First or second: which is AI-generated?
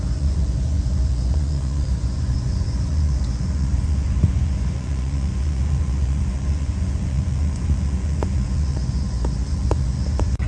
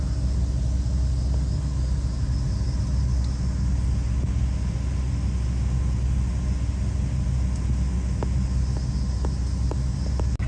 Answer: first